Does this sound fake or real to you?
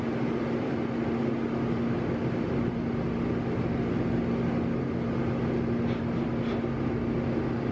real